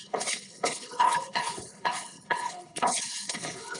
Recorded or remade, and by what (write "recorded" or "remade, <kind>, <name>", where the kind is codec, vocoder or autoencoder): remade, codec, HILCodec